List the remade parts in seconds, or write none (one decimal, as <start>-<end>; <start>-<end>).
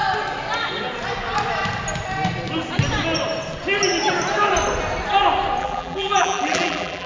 5.6-7.1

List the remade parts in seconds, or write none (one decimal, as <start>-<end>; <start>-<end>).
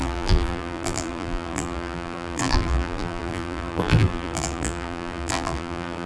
0.0-6.1